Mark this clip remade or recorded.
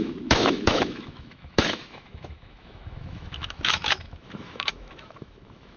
remade